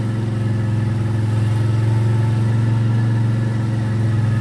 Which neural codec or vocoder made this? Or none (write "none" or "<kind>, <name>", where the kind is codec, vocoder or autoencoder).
none